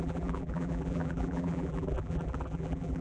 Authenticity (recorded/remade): remade